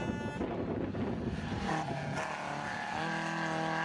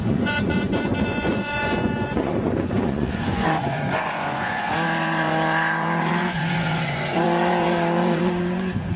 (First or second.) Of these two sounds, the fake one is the second